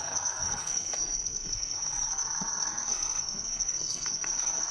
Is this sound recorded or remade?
remade